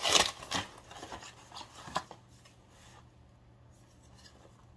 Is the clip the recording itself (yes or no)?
yes